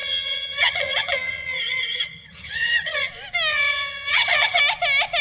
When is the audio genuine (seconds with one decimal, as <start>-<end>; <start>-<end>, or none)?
3.1-3.5; 4.6-5.2